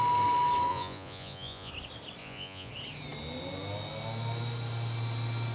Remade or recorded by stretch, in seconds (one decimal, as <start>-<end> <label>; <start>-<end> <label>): 0.0-0.7 recorded; 0.7-1.7 remade; 1.7-2.2 recorded; 2.2-2.7 remade; 2.7-5.5 recorded